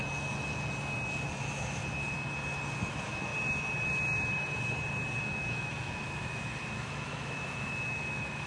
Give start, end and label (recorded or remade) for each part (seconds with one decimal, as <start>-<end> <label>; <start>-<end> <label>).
0.0-1.4 recorded; 1.4-1.8 remade; 1.8-2.9 recorded; 2.9-3.3 remade; 3.3-5.2 recorded; 5.2-8.5 remade